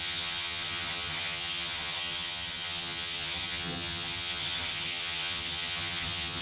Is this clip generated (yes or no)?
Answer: yes